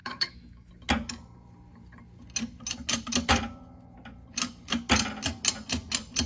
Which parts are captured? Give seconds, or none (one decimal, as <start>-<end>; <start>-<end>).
0.7-6.3

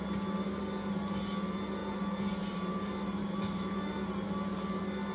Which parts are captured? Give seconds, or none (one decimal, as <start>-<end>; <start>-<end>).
0.0-3.2; 3.9-5.1

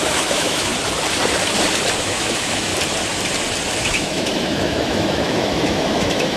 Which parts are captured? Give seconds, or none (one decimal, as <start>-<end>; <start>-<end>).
0.7-2.0; 2.7-3.8

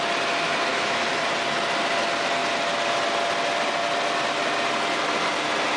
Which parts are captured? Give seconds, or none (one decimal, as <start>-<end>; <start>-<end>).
0.0-0.7; 1.2-5.8

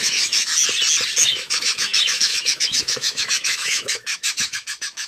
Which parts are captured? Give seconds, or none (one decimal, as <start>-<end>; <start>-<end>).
0.5-1.2

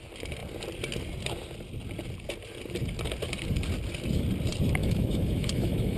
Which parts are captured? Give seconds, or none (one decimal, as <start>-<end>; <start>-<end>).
0.0-4.8